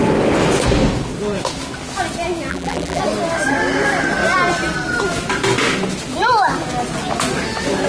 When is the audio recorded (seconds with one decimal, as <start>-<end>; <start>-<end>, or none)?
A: 0.0-2.5; 3.0-7.9